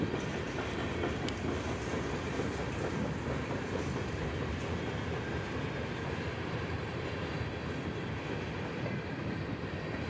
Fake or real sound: real